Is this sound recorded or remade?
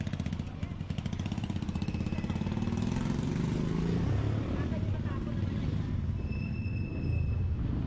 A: recorded